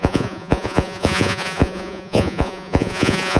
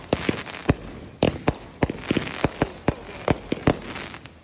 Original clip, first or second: second